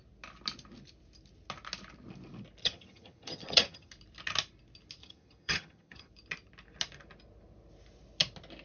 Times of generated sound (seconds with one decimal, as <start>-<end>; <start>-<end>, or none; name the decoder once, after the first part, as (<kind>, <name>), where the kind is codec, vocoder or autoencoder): 2.6-3.9 (vocoder, HiFi-GAN); 5.0-6.1